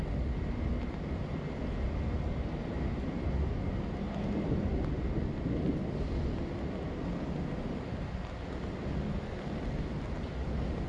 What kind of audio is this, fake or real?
real